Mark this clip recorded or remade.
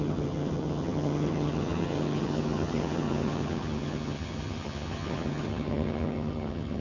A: remade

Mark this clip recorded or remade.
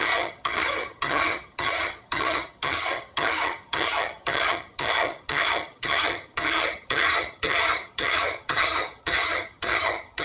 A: remade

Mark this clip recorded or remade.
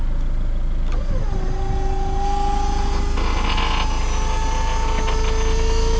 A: recorded